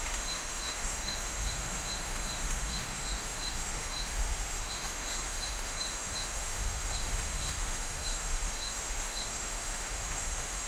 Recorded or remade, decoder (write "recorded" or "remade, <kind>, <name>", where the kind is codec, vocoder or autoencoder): remade, autoencoder, DAC-VAE